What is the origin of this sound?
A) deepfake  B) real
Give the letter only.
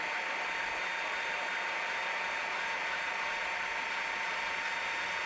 B